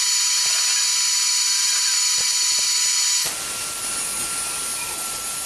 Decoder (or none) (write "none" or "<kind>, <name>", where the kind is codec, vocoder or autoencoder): none